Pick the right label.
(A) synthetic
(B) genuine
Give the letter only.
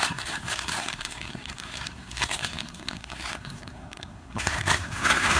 A